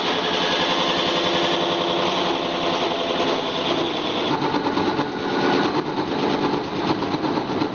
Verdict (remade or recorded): recorded